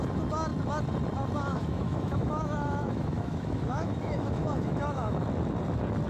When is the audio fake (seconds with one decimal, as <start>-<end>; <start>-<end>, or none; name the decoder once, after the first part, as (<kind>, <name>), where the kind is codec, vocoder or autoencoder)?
1.5-5.2 (autoencoder, DAC-VAE)